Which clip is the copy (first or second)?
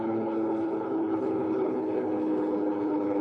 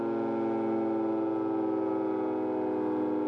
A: first